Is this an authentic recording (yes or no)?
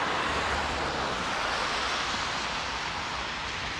yes